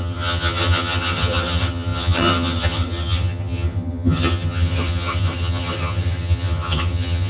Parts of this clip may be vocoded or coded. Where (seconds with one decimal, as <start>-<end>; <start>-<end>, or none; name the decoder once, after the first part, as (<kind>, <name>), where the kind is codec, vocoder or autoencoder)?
0.0-7.3 (vocoder, HiFi-GAN)